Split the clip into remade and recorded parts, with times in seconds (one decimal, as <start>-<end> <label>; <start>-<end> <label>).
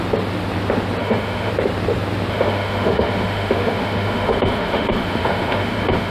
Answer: 0.0-1.0 recorded; 1.0-1.5 remade; 1.5-2.3 recorded; 2.3-6.1 remade